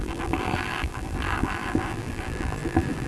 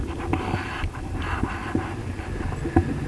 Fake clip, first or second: first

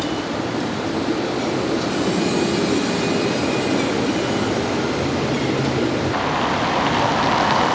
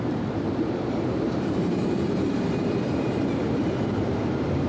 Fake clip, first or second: second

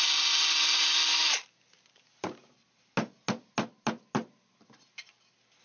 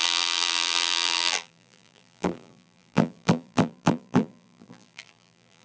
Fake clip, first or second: second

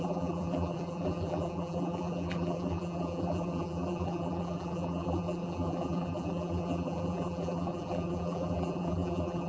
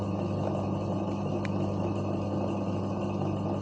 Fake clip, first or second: first